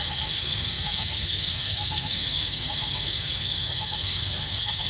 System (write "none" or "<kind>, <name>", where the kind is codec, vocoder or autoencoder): codec, SNAC